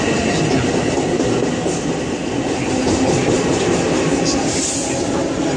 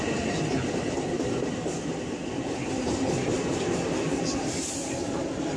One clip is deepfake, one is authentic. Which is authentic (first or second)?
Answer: first